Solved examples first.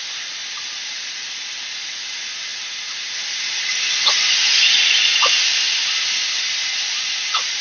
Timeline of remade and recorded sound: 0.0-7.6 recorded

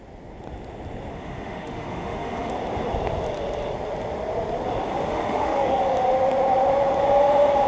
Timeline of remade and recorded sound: 0.0-1.1 recorded; 1.1-2.5 remade; 2.5-5.1 recorded; 5.1-5.8 remade; 5.8-7.7 recorded

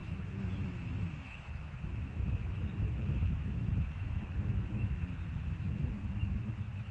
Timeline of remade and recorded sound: 0.0-5.2 remade; 5.2-5.7 recorded; 5.7-6.9 remade

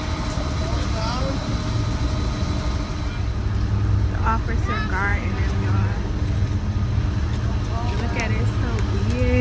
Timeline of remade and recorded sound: 0.0-9.4 recorded

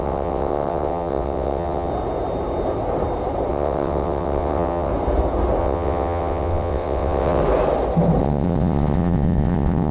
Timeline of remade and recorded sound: 0.0-1.9 remade; 1.9-3.5 recorded; 3.5-4.9 remade; 4.9-5.6 recorded; 5.6-7.4 remade; 7.4-8.2 recorded; 8.2-9.9 remade

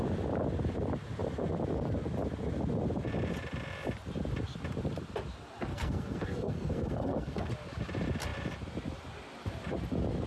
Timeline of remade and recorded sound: 0.0-5.7 recorded; 5.7-7.5 remade; 7.5-10.3 recorded